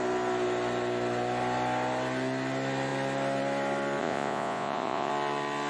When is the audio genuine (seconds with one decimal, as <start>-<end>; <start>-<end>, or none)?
0.0-4.0; 5.1-5.7